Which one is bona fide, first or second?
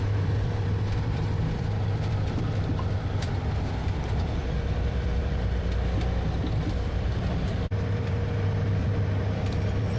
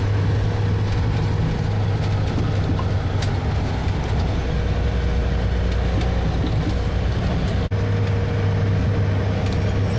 second